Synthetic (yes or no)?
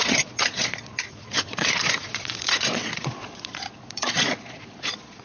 yes